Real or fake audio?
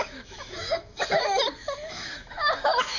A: fake